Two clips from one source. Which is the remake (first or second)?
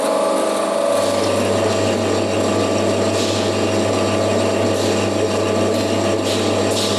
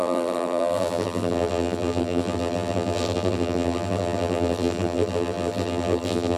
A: second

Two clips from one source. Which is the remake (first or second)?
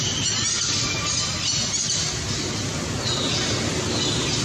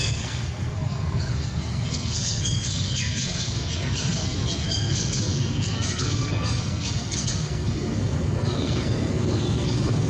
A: second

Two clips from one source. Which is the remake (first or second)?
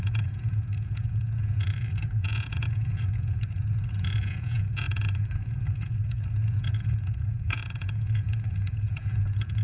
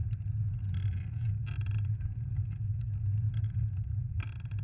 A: first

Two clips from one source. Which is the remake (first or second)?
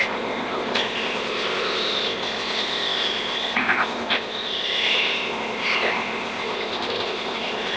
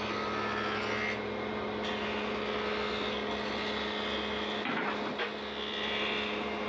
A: first